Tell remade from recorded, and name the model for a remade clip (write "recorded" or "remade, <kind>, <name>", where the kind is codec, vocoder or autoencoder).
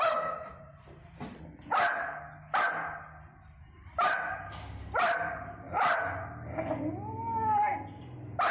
recorded